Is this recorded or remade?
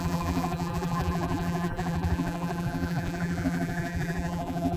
remade